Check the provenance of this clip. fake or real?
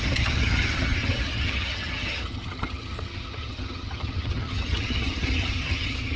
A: fake